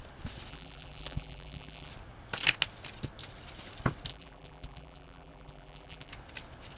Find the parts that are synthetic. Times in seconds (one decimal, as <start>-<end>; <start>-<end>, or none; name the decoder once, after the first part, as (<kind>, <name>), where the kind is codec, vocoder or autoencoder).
0.5-1.9 (vocoder, BigVGAN v2); 4.1-6.1

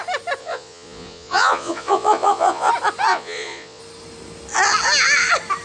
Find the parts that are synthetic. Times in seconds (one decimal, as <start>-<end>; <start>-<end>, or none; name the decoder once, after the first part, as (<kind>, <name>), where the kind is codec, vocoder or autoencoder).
0.4-2.7 (vocoder, Vocos); 3.1-3.8

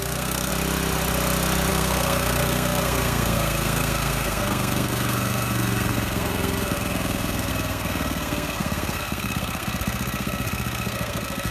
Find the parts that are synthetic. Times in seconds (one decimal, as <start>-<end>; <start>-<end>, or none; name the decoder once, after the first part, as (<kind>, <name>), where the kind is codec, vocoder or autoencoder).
0.0-0.5 (codec, SNAC); 1.7-11.5

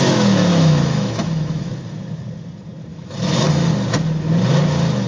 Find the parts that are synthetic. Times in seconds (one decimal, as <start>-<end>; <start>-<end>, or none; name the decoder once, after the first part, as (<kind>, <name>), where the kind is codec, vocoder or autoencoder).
0.5-1.7 (autoencoder, DAC-VAE); 2.9-3.7

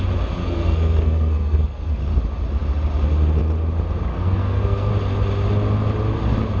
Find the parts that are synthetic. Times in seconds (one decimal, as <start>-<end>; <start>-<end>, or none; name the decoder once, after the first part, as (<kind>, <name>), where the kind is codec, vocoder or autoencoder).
0.4-2.0 (codec, SNAC); 4.1-4.9